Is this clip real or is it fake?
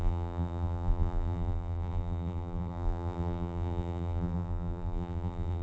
fake